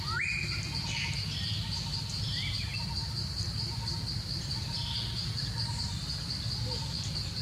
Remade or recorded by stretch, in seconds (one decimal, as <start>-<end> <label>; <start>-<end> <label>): 0.0-7.4 recorded